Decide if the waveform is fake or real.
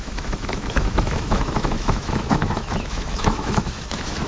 fake